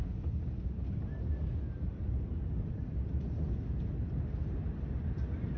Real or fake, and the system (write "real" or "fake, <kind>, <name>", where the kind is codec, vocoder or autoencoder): real